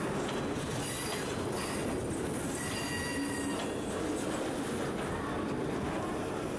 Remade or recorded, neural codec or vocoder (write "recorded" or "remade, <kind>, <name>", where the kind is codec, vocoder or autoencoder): recorded